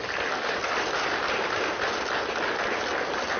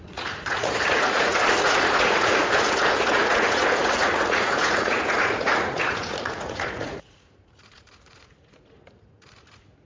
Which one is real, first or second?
first